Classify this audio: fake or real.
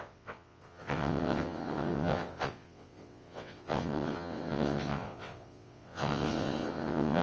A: fake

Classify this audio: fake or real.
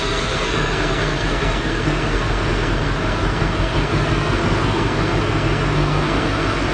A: fake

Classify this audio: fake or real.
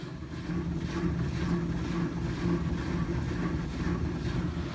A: real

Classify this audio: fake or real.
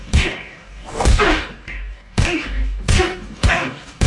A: fake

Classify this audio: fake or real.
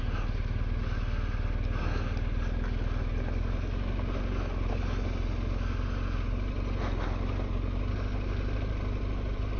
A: real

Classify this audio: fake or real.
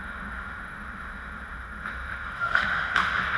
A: fake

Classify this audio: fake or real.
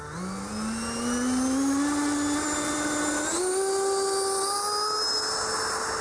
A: real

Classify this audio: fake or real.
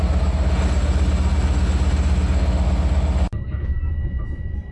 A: real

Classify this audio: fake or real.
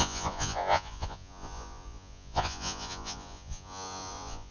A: fake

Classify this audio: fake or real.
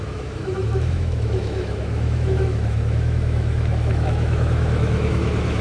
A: fake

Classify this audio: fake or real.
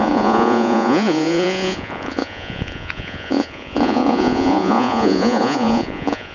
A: fake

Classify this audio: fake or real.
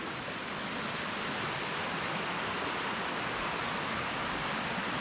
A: real